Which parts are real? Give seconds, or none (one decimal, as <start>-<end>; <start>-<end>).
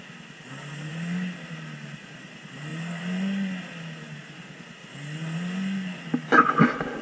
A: 0.0-7.0